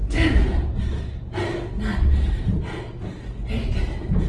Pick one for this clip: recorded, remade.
recorded